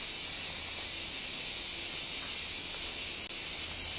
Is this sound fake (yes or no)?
no